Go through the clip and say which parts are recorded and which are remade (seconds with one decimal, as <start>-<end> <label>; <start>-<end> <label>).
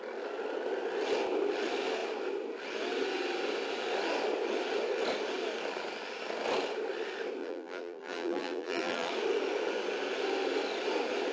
0.0-7.4 recorded; 7.4-9.1 remade; 9.1-11.3 recorded